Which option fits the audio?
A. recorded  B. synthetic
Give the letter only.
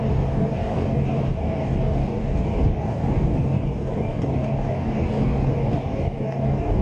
B